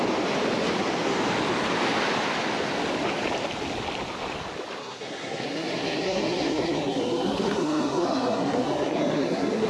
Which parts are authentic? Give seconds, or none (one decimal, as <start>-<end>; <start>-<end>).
0.0-4.8

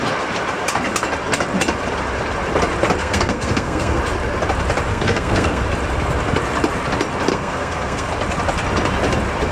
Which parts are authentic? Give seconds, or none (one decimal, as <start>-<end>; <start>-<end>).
0.0-3.0; 4.0-4.9; 5.6-7.3; 8.1-9.5